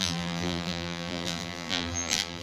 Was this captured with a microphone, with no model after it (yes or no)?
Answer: no